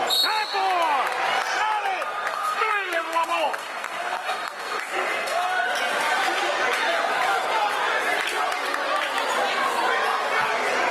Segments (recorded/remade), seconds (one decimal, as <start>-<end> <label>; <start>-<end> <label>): 0.0-2.3 recorded; 2.3-5.7 remade; 5.7-10.9 recorded